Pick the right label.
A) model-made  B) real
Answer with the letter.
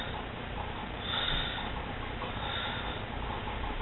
A